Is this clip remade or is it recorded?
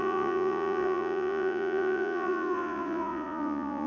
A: remade